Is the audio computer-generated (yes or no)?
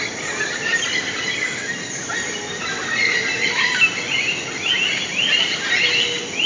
no